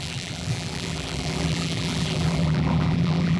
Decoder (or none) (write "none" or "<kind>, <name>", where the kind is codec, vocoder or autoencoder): vocoder, BigVGAN v2